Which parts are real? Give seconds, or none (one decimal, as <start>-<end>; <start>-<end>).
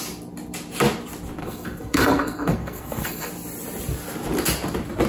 0.0-1.4; 3.3-5.1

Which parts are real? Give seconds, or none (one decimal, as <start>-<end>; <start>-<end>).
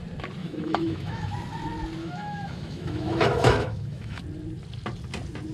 0.0-0.4; 1.3-2.0; 4.2-5.5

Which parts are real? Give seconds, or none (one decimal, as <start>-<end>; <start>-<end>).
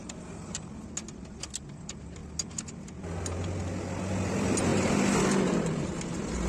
0.0-6.5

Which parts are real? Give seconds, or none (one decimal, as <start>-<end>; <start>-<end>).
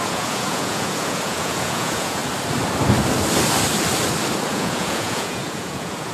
2.2-4.5